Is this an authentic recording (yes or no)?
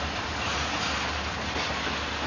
yes